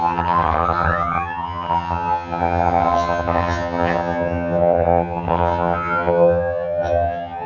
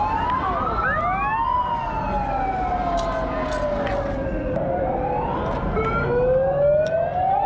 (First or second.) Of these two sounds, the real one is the second